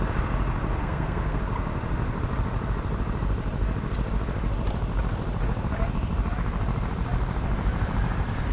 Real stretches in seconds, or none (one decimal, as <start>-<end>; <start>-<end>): 0.0-0.8; 1.4-8.5